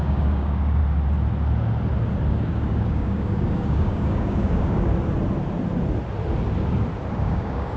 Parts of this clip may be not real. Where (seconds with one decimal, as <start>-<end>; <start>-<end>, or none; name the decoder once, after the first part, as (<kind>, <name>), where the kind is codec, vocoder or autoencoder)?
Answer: 0.0-0.8 (codec, DAC); 2.3-4.9; 7.1-7.8